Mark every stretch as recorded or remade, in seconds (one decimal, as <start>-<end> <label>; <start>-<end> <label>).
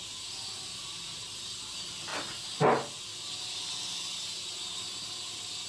0.0-5.7 recorded